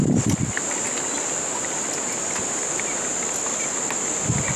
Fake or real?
real